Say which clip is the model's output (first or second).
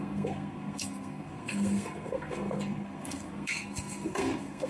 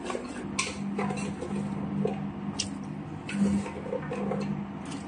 first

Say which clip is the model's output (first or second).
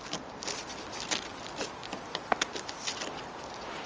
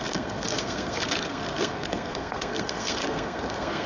second